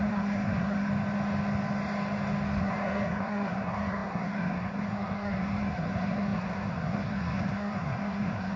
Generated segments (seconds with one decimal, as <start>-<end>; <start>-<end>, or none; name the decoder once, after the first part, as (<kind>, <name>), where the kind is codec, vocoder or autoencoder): 0.0-0.9 (codec, SNAC); 2.6-8.6